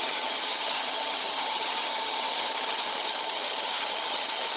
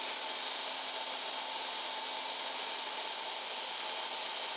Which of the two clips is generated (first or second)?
first